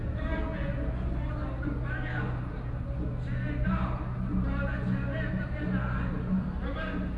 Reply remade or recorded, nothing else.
recorded